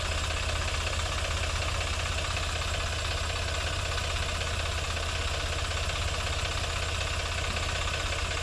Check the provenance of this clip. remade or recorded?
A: recorded